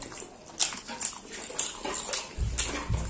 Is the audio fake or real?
real